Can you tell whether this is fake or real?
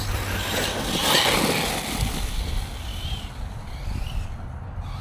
real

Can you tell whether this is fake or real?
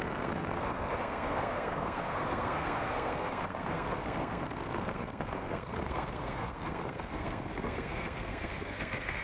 fake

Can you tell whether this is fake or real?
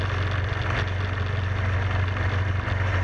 real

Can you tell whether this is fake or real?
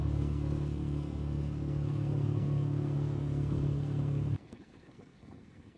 fake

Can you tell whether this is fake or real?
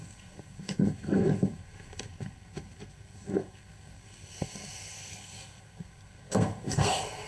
fake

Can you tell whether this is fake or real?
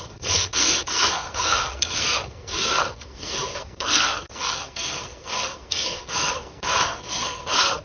fake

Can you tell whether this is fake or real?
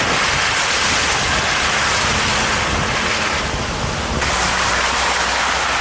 real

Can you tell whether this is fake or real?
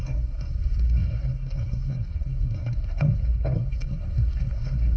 fake